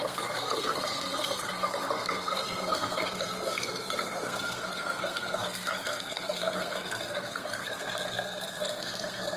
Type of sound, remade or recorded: remade